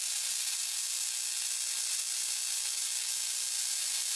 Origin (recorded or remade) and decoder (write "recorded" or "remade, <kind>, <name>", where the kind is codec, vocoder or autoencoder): recorded